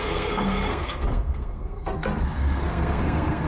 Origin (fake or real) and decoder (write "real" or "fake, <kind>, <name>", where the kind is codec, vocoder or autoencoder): fake, codec, SNAC